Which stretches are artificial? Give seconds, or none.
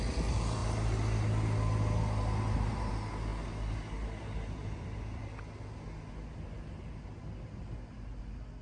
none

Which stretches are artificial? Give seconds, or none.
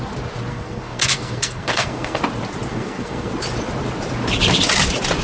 0.5-2.2 (codec, SNAC); 2.7-3.3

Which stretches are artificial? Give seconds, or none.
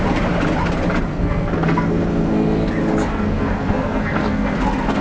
1.1-2.7 (codec, SNAC); 3.1-5.0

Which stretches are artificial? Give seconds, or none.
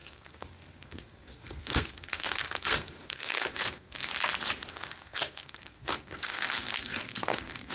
0.0-4.1 (codec, SNAC); 4.7-7.7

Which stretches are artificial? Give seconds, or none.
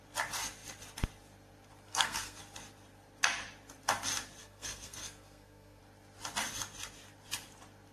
1.9-2.4 (codec, SNAC); 4.4-5.8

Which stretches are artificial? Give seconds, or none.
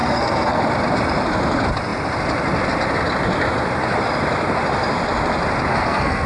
0.0-0.6 (codec, SNAC); 5.7-6.3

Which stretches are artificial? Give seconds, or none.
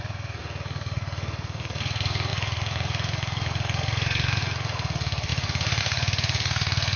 0.0-7.0 (codec, SNAC)